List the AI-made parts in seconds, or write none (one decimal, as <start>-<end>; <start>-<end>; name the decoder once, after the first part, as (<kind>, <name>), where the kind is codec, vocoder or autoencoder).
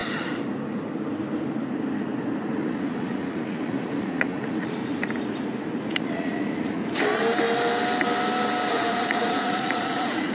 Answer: 2.5-4.8 (vocoder, Vocos); 5.9-6.8; 8.7-10.3